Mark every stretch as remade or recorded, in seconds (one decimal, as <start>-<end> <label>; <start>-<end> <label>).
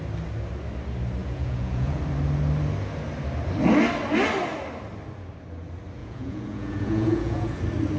0.0-1.2 recorded; 1.2-2.0 remade; 2.0-6.0 recorded; 6.0-7.6 remade; 7.6-8.0 recorded